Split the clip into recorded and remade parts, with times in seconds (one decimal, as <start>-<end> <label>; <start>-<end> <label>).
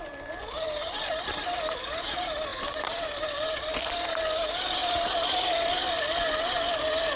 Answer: 0.0-7.2 recorded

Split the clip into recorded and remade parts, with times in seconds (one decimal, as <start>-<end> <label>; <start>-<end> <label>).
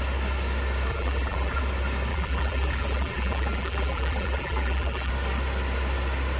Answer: 0.0-0.9 recorded; 0.9-1.6 remade; 1.6-2.1 recorded; 2.1-5.1 remade; 5.1-6.4 recorded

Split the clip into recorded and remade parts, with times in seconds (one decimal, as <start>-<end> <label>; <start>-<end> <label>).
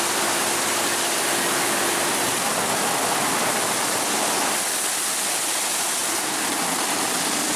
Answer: 0.0-7.6 recorded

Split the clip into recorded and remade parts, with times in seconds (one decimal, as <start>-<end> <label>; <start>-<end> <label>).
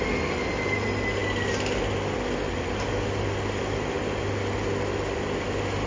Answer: 0.0-5.9 recorded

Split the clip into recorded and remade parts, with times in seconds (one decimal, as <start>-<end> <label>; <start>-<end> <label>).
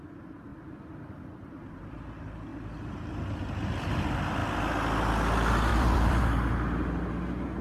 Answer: 0.0-2.5 recorded; 2.5-3.1 remade; 3.1-5.7 recorded; 5.7-6.2 remade; 6.2-7.6 recorded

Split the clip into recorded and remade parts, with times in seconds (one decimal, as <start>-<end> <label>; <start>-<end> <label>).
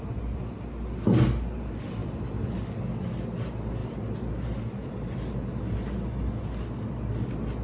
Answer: 0.0-7.6 recorded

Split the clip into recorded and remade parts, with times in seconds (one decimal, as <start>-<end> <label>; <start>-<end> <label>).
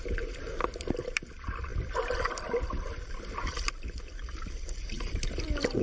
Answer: 0.0-4.8 recorded; 4.8-5.8 remade